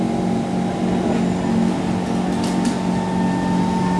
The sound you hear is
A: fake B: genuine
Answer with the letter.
B